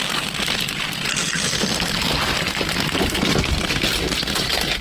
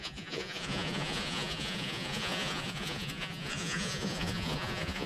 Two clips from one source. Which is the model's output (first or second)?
second